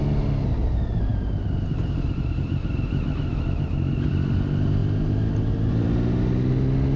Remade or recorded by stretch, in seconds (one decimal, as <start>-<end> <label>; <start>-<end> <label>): 0.0-7.0 recorded